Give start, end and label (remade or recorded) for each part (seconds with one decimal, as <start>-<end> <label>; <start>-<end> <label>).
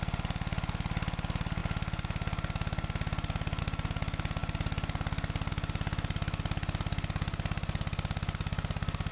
0.0-9.1 recorded